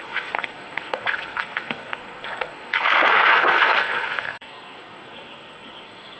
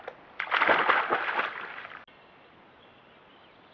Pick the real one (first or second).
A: second